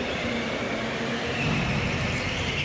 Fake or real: real